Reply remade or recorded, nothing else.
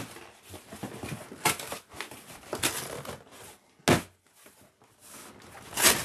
recorded